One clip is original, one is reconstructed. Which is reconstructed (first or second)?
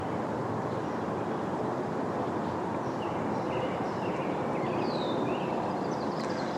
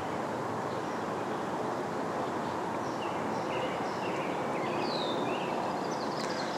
first